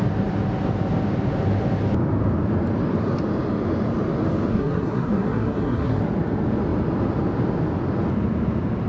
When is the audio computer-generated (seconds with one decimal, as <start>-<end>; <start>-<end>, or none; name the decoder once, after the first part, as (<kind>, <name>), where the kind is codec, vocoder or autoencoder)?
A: 4.5-6.0 (codec, SNAC)